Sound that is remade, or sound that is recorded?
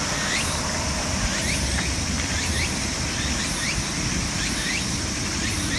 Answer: recorded